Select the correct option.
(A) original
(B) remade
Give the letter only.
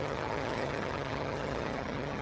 B